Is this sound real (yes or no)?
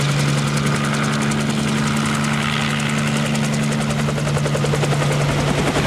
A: yes